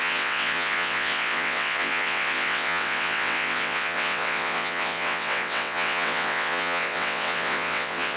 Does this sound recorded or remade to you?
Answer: remade